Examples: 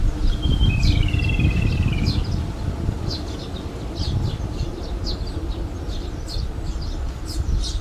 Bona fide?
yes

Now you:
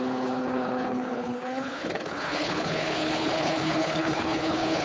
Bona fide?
no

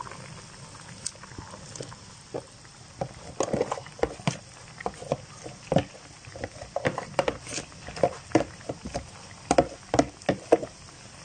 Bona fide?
yes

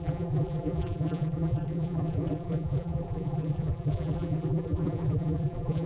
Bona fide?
no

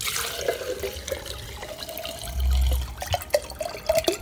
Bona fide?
yes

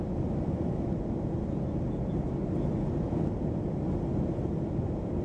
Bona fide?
yes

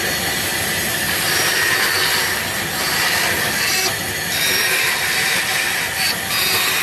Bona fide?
yes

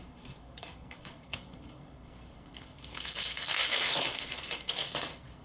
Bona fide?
no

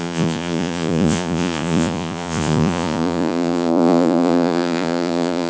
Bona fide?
no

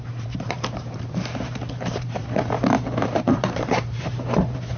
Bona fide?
no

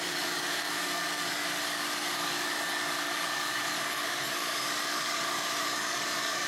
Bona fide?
no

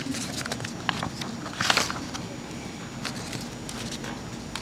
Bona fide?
yes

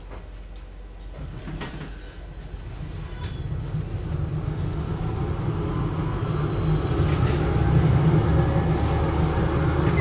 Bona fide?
yes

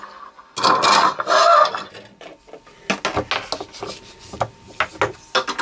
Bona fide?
yes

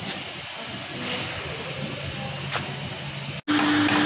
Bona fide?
yes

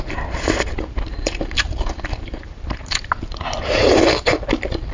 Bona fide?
no